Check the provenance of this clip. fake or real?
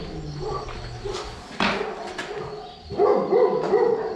real